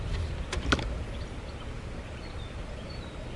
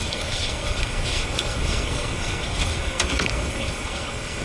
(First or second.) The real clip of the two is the first